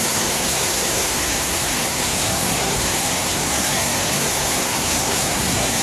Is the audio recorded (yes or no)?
no